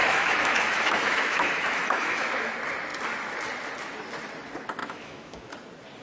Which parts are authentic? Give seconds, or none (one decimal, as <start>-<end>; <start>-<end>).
2.5-4.8; 5.5-6.0